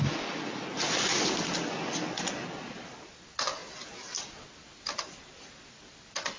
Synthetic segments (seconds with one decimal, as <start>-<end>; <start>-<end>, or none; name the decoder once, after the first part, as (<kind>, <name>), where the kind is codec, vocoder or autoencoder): none